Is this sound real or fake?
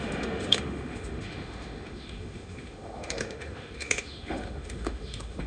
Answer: fake